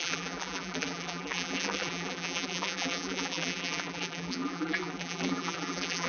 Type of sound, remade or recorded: remade